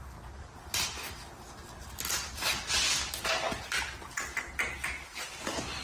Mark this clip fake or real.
real